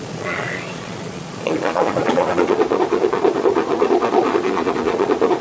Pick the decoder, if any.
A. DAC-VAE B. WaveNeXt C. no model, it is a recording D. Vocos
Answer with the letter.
D